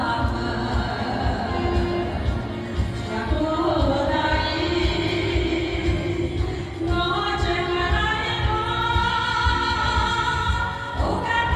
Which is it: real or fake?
real